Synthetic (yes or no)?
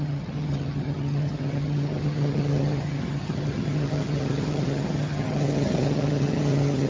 yes